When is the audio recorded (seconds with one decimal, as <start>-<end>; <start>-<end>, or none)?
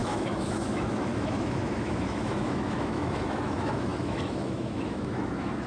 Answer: none